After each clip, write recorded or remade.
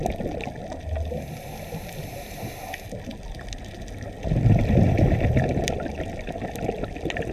recorded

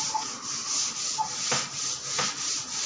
recorded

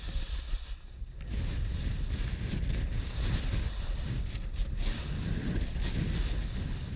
recorded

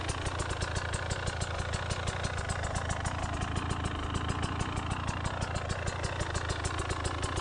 recorded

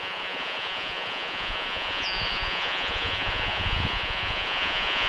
remade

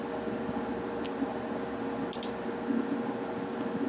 recorded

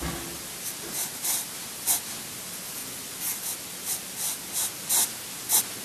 recorded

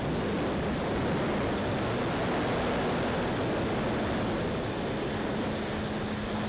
recorded